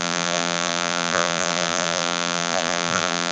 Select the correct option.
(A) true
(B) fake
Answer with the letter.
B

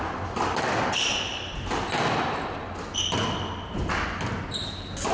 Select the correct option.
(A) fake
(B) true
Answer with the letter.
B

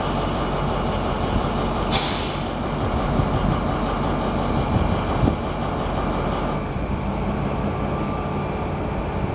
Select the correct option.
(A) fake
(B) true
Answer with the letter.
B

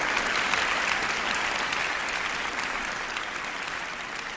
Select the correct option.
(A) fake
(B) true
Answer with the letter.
B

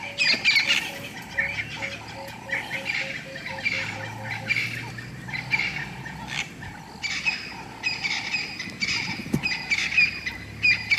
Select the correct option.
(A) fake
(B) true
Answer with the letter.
B